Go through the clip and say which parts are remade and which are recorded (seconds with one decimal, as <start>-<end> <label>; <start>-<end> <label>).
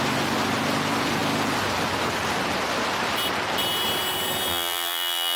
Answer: 0.0-4.5 recorded; 4.5-5.4 remade